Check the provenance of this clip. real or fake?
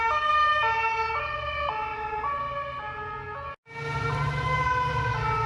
real